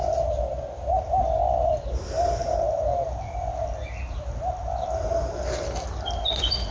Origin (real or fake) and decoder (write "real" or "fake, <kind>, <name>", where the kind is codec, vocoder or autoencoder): real